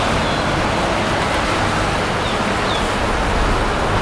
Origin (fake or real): real